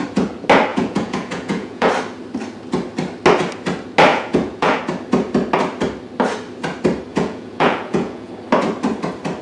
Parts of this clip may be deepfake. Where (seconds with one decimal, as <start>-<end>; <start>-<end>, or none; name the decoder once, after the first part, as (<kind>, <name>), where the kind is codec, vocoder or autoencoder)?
0.7-1.9 (vocoder, Vocos); 4.1-4.8; 7.1-8.3